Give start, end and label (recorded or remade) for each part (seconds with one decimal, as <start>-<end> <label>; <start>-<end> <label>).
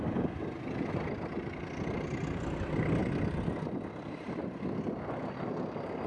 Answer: 0.0-6.1 recorded